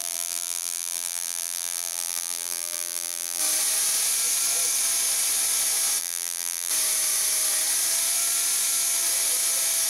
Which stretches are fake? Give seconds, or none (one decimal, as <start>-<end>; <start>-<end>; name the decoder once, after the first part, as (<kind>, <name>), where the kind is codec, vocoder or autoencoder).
0.0-3.4 (vocoder, BigVGAN v2); 6.0-6.7